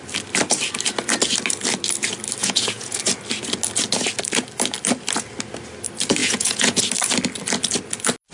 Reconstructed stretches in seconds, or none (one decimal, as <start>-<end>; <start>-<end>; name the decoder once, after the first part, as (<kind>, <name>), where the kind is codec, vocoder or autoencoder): 2.4-3.0 (vocoder, Vocos); 6.2-6.8